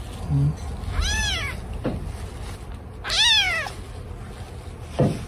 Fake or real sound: real